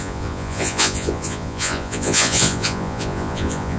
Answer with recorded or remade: remade